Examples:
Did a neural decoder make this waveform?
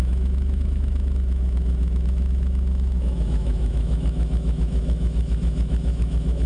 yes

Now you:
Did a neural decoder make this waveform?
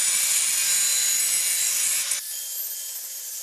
no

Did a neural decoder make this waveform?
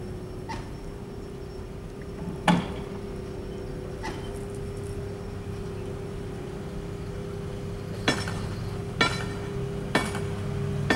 no